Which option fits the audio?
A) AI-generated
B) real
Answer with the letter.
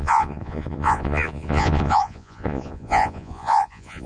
A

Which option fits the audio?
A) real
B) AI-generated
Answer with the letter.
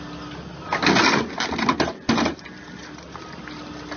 A